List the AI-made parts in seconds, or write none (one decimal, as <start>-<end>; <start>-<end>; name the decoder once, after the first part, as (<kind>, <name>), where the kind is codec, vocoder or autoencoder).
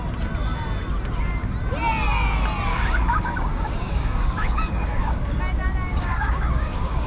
2.7-5.4 (codec, DAC); 5.9-7.1